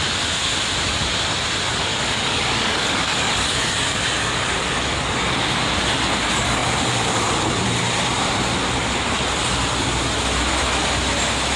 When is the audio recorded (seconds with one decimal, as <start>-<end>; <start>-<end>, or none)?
0.0-1.9; 5.3-11.6